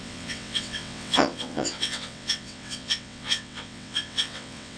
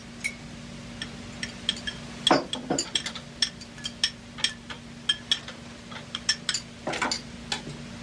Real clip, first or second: second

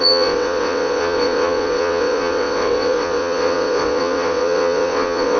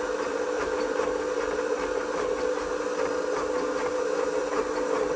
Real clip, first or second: second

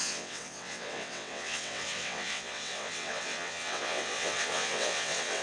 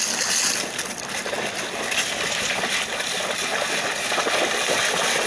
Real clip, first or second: second